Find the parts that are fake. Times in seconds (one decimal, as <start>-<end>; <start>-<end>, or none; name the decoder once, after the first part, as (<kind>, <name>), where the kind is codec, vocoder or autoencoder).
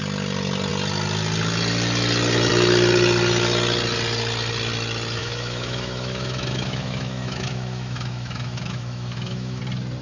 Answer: 5.2-9.6 (autoencoder, DAC-VAE)